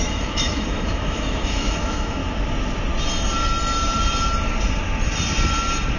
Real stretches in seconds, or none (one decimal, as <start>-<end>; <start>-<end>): 2.2-6.0